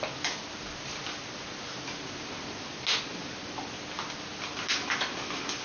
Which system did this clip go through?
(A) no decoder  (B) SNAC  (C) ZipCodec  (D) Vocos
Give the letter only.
A